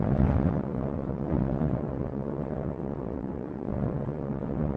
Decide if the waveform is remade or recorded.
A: remade